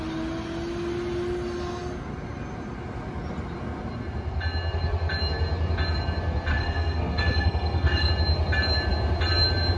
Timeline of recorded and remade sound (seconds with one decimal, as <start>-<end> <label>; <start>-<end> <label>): 0.0-6.5 recorded; 6.5-8.1 remade; 8.1-9.8 recorded